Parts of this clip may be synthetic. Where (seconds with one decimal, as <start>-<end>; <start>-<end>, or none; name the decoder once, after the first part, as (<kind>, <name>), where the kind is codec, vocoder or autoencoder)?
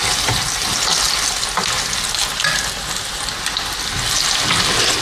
none